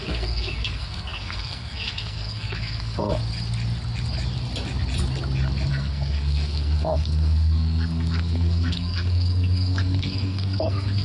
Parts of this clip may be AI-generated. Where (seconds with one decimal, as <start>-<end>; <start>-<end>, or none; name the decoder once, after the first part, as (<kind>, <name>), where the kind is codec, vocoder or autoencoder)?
0.0-3.2 (codec, SNAC); 5.7-11.0